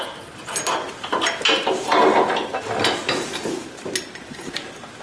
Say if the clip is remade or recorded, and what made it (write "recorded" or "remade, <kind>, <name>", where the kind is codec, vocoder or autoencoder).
recorded